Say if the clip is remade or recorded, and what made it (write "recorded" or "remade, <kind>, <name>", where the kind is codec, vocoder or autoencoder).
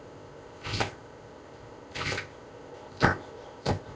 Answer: remade, codec, ZipCodec